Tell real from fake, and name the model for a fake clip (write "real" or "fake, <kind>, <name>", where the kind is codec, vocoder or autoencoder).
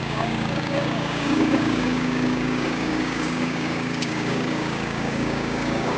fake, codec, DAC